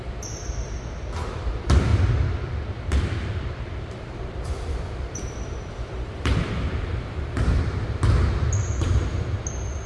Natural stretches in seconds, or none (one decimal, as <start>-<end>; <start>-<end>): 0.4-1.3; 1.9-3.3; 6.9-9.9

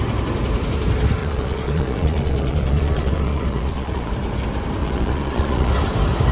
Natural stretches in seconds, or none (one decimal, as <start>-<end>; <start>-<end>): 0.0-1.2; 4.1-4.8; 5.7-6.3

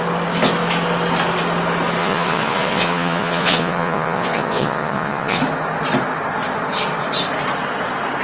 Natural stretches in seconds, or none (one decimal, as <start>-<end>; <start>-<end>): 0.0-2.0; 5.4-8.2

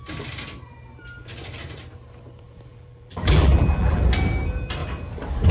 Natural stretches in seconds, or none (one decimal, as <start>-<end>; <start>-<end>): 0.0-2.7; 4.0-5.5

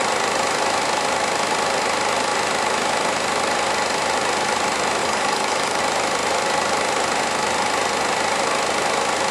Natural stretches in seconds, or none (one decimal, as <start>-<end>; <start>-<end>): 0.0-5.0; 5.8-9.3

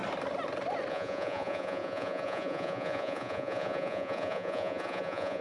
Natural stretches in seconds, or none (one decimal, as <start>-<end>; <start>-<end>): 0.0-0.9

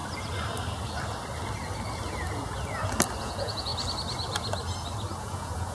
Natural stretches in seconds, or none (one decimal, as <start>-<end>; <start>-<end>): 0.0-3.2; 3.7-5.2